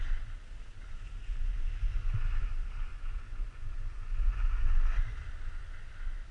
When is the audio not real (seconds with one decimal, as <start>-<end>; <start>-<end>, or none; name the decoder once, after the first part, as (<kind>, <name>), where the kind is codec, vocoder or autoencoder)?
2.9-4.7 (vocoder, Vocos)